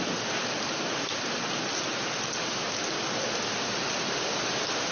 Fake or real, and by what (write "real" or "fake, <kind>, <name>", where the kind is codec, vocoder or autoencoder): real